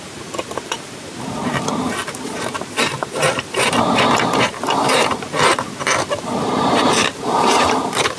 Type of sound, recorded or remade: remade